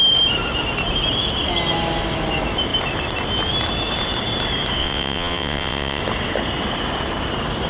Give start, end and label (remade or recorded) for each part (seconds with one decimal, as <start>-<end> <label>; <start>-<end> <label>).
0.0-4.8 recorded; 4.8-6.0 remade; 6.0-7.7 recorded